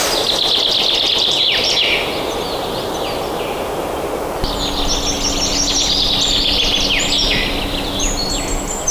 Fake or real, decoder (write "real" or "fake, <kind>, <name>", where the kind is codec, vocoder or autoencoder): real